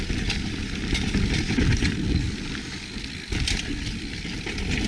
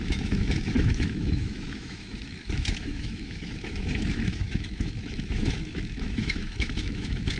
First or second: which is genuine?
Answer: first